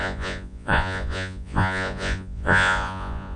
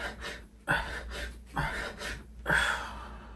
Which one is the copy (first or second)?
first